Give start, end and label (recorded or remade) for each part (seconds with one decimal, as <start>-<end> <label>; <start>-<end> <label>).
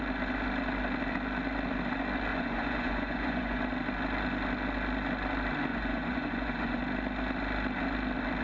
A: 0.0-2.3 recorded; 2.3-3.6 remade; 3.6-5.7 recorded; 5.7-6.8 remade; 6.8-8.4 recorded